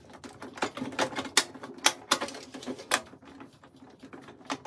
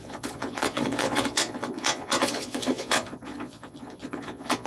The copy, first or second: second